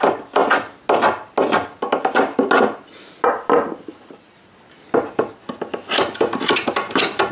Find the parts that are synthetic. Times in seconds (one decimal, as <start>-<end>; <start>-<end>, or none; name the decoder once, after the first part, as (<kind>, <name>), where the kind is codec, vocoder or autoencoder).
none